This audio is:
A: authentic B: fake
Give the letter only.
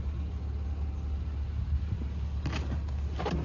A